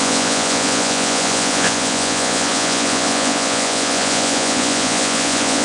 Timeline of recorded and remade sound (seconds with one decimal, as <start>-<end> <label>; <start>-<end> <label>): 0.0-5.6 remade